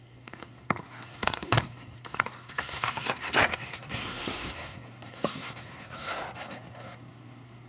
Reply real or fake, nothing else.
fake